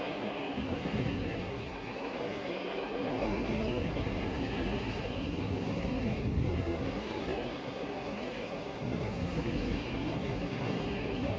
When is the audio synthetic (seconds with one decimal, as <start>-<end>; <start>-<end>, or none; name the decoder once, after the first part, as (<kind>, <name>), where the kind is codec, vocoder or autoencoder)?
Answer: 0.0-11.4 (codec, SNAC)